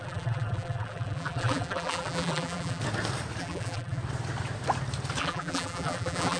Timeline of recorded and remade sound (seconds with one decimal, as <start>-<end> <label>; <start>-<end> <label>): 0.0-2.8 remade; 2.8-3.4 recorded; 3.4-4.0 remade; 4.0-5.2 recorded; 5.2-6.4 remade